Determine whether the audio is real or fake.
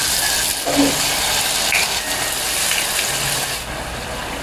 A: real